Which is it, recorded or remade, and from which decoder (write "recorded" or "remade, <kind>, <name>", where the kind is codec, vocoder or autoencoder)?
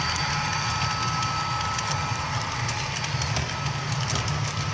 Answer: recorded